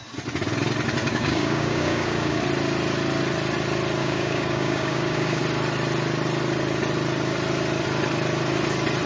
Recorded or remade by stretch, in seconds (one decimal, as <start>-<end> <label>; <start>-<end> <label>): 0.0-1.0 recorded; 1.0-2.4 remade; 2.4-4.0 recorded; 4.0-5.4 remade; 5.4-9.1 recorded

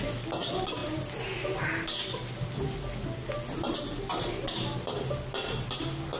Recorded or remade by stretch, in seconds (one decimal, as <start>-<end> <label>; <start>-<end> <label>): 0.0-6.2 recorded

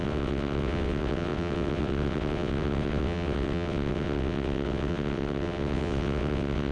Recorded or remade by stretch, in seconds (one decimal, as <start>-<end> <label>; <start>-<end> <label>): 0.0-6.7 remade

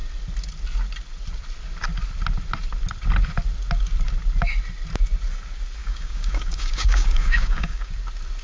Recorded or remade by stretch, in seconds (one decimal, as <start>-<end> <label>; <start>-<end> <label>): 0.0-5.8 recorded; 5.8-7.9 remade; 7.9-8.4 recorded

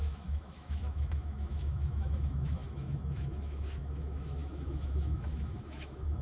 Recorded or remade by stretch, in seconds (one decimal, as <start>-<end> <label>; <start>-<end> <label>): 0.0-6.2 remade

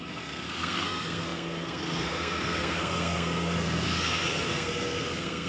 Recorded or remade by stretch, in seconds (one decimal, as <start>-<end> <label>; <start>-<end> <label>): 0.0-5.5 remade

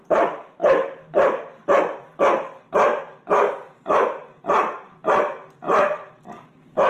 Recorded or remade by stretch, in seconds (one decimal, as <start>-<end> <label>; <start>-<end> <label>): 0.0-0.6 remade; 0.6-3.2 recorded; 3.2-6.9 remade